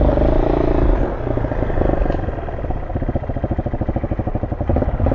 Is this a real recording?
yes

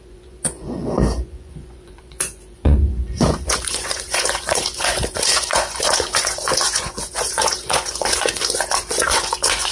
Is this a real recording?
no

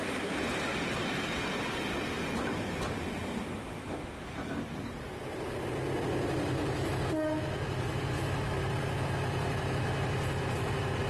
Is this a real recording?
yes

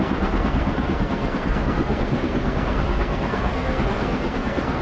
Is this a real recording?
no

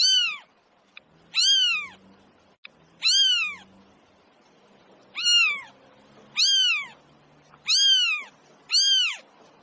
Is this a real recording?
yes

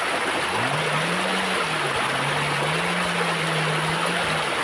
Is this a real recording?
yes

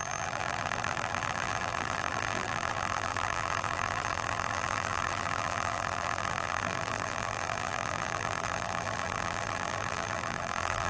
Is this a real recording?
no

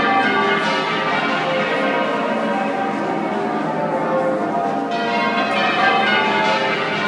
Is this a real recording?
yes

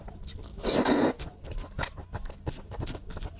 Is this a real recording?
yes